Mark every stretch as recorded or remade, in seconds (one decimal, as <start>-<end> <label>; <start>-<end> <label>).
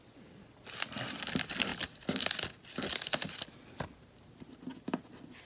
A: 0.0-5.5 recorded